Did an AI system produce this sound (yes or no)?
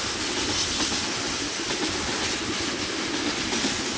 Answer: no